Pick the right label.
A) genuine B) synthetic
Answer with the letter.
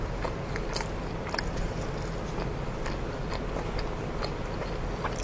A